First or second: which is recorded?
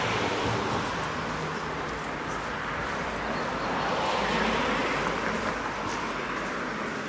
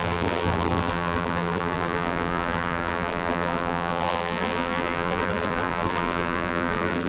first